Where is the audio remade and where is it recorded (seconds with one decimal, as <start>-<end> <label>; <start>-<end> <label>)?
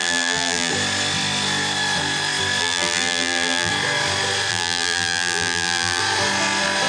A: 0.0-0.7 remade; 0.7-2.6 recorded; 2.6-3.7 remade; 3.7-4.5 recorded; 4.5-6.0 remade; 6.0-6.9 recorded